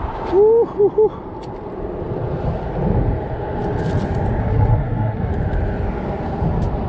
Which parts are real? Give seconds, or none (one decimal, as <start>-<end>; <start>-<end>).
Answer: 0.0-4.4; 5.3-6.9